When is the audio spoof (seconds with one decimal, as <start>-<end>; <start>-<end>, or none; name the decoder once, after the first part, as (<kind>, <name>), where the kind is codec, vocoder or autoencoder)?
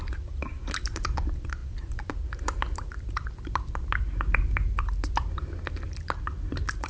0.0-6.9 (vocoder, BigVGAN v2)